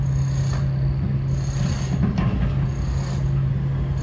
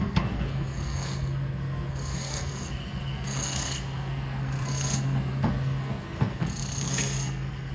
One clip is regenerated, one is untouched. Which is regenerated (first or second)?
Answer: second